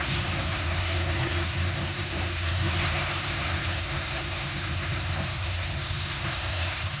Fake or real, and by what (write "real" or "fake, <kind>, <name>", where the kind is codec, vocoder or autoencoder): fake, codec, SNAC